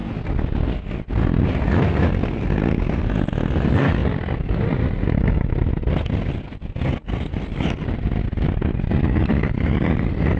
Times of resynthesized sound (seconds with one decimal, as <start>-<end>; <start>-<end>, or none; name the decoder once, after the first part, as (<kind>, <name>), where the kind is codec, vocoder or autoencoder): none